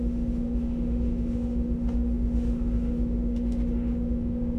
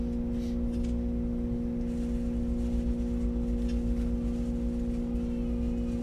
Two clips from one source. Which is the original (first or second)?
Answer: second